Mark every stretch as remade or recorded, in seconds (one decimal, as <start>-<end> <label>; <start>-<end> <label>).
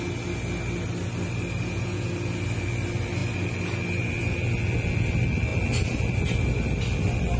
0.0-1.6 recorded; 1.6-2.1 remade; 2.1-7.4 recorded